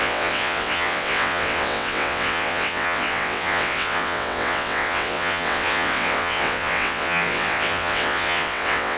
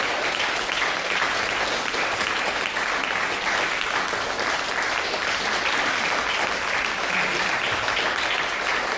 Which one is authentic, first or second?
second